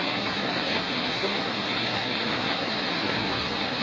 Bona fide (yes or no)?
no